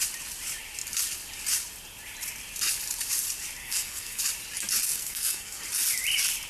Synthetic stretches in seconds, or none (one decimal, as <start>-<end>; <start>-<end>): 3.6-4.2; 4.9-5.6